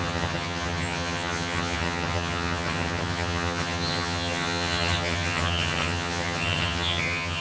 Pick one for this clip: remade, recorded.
remade